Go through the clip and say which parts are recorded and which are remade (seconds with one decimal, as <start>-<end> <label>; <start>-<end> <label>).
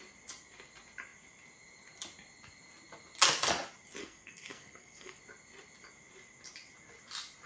0.0-4.0 recorded; 4.0-5.2 remade; 5.2-7.5 recorded